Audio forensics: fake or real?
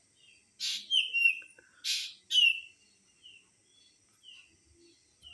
real